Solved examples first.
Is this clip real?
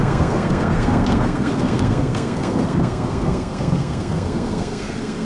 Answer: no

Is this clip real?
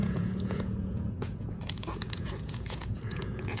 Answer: no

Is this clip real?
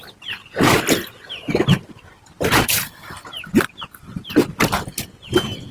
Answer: yes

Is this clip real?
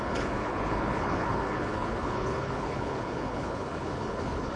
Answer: no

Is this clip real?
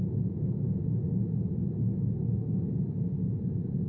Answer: yes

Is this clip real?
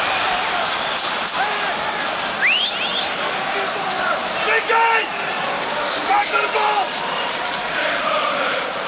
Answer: no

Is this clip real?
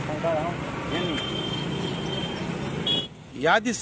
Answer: yes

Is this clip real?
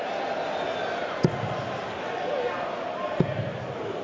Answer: yes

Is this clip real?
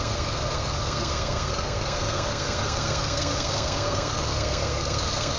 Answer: no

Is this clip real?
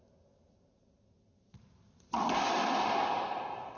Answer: yes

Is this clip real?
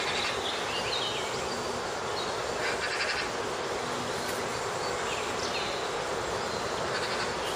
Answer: yes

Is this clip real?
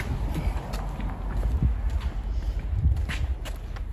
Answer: yes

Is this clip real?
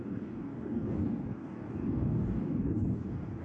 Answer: no